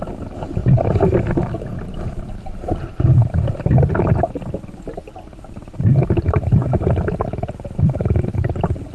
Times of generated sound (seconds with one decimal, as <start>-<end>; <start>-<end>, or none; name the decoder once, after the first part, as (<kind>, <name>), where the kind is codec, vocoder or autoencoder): none